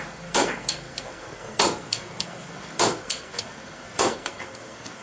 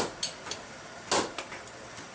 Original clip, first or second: second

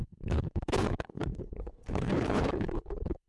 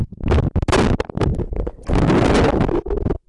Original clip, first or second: second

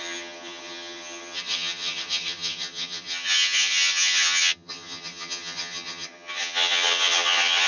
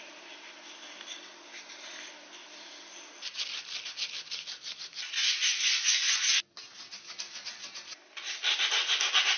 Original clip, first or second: second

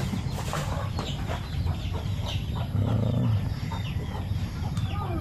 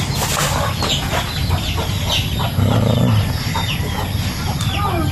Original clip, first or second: second